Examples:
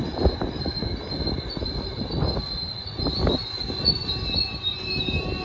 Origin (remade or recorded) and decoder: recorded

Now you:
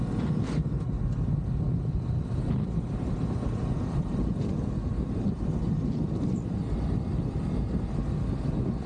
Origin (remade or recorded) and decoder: recorded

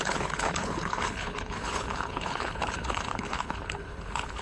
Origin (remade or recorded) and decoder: remade, codec, HILCodec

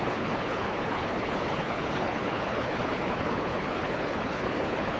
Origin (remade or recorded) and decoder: remade, codec, HILCodec